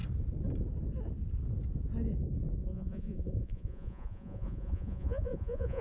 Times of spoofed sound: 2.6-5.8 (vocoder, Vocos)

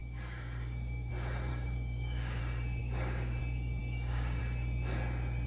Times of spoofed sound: 0.0-1.1 (codec, DAC); 1.5-2.4; 2.8-3.4; 3.8-4.4

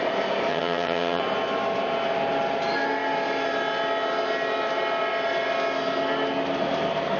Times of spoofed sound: 0.5-1.2 (vocoder, HiFi-GAN)

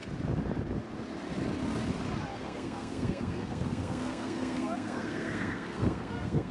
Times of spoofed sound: 2.3-6.5 (codec, SNAC)

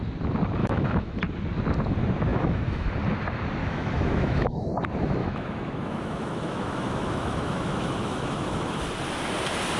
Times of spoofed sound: 0.6-1.2 (autoencoder, DAC-VAE); 2.3-2.9; 3.6-4.7; 5.2-8.8

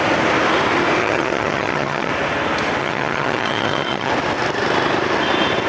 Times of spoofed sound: 1.0-2.1 (vocoder, HiFi-GAN); 2.8-4.1

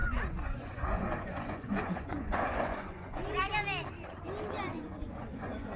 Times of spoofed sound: 0.0-3.5 (vocoder, Vocos); 4.7-5.8